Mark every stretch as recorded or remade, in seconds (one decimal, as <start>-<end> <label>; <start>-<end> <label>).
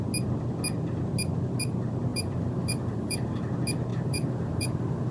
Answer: 0.0-2.1 recorded; 2.1-3.4 remade; 3.4-3.9 recorded; 3.9-5.1 remade